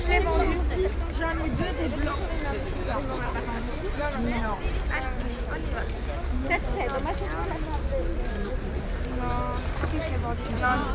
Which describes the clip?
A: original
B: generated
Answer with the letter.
A